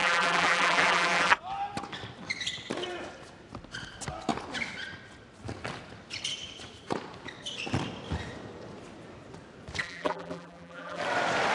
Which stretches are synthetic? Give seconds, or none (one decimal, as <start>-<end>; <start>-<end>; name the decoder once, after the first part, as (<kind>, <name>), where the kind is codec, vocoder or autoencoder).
0.0-1.4 (vocoder, BigVGAN v2); 9.8-11.0